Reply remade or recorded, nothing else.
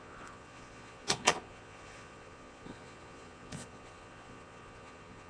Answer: remade